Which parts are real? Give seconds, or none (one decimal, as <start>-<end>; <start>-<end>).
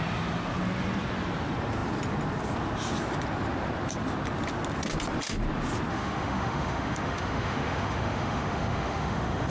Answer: 0.0-5.9